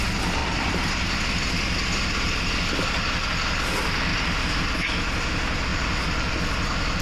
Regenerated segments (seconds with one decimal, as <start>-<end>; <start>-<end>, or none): 0.4-1.2; 4.1-4.6; 5.7-6.3